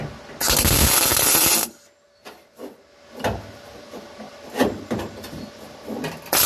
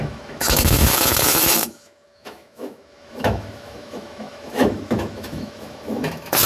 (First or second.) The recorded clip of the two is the first